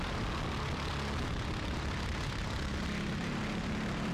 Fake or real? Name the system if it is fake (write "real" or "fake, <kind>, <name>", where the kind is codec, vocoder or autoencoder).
real